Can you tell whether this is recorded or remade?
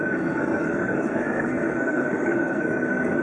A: remade